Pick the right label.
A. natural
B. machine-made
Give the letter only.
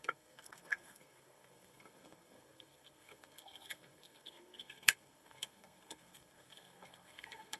B